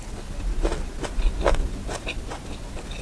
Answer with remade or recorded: recorded